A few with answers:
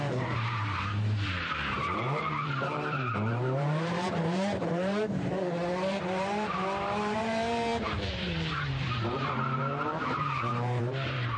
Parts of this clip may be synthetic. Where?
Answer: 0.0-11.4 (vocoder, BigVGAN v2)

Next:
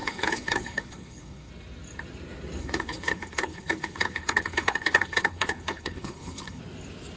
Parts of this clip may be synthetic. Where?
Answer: 0.0-1.5 (codec, HILCodec); 2.6-6.6

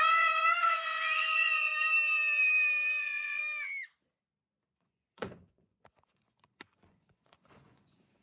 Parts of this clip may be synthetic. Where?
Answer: 0.0-1.7 (vocoder, Vocos); 3.0-3.4; 4.7-8.2

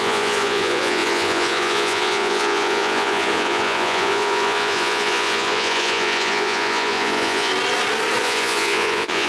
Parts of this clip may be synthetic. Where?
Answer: 0.0-7.5 (vocoder, Vocos); 8.2-9.3

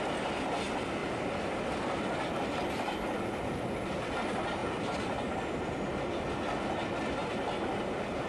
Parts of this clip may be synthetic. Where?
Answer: 4.6-5.2 (vocoder, BigVGAN v2)